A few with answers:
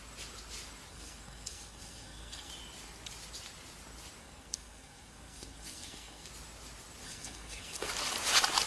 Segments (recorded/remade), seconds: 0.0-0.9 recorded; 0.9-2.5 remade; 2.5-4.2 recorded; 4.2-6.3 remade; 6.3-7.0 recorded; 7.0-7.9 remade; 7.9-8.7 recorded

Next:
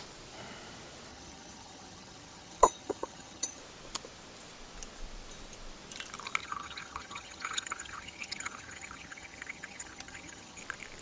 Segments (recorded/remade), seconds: 0.0-1.1 recorded; 1.1-3.6 remade; 3.6-6.4 recorded; 6.4-10.6 remade; 10.6-11.0 recorded

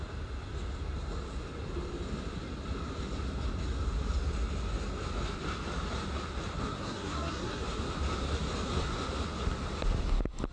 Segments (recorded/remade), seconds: 0.0-6.6 recorded; 6.6-7.6 remade; 7.6-10.5 recorded

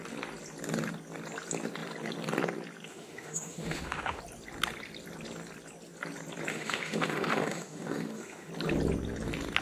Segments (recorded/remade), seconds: 0.0-2.9 recorded; 2.9-4.2 remade; 4.2-6.5 recorded; 6.5-8.5 remade; 8.5-9.6 recorded

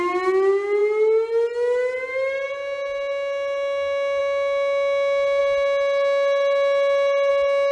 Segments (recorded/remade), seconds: 0.0-7.7 recorded

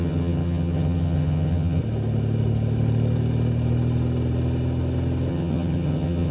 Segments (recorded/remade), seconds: 0.0-1.8 remade; 1.8-5.3 recorded; 5.3-6.3 remade

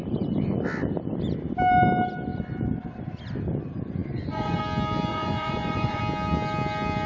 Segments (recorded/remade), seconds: 0.0-4.0 recorded; 4.0-4.6 remade; 4.6-5.1 recorded; 5.1-6.0 remade; 6.0-7.1 recorded